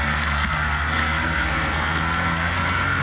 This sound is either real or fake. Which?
fake